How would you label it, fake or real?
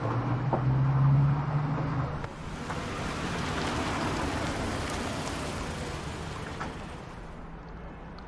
real